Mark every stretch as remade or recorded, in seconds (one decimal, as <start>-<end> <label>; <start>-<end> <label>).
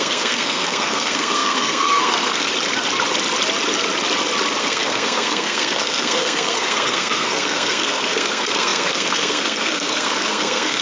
0.0-2.5 remade; 2.5-4.6 recorded; 4.6-10.8 remade